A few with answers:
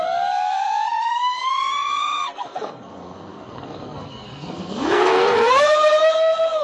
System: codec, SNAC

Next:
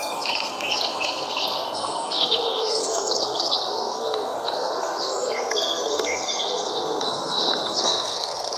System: codec, SNAC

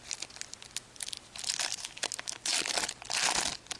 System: none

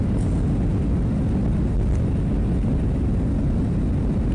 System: none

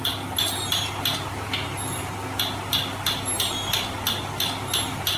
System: none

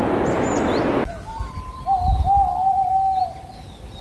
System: none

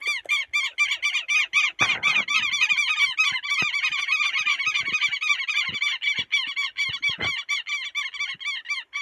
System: none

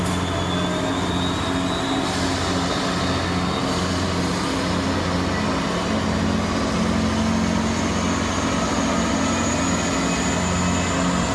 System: none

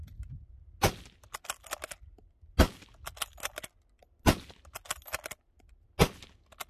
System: none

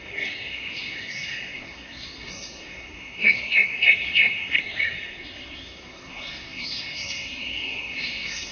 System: codec, SNAC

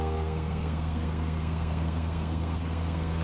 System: codec, SNAC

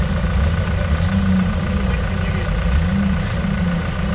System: none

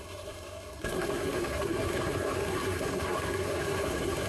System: codec, SNAC